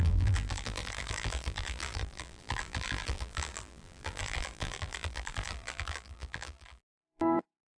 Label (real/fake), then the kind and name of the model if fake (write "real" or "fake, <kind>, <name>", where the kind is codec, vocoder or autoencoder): fake, vocoder, BigVGAN v2